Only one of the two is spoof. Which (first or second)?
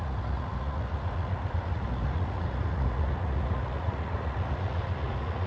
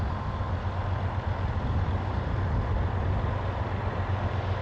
first